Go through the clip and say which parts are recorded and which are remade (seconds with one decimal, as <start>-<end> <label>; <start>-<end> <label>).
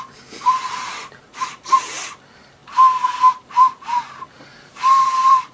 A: 0.0-2.6 remade; 2.6-3.3 recorded; 3.3-5.5 remade